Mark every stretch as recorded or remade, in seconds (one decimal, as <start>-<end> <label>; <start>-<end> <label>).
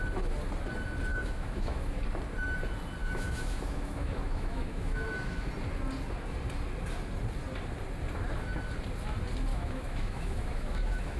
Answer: 0.0-1.1 recorded; 1.1-2.0 remade; 2.0-3.0 recorded; 3.0-5.5 remade; 5.5-9.5 recorded; 9.5-11.2 remade